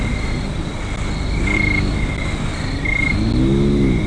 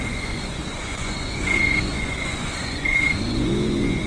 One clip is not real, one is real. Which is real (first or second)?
first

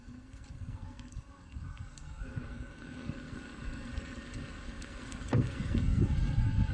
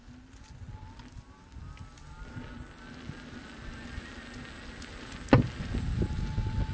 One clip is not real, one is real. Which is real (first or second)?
second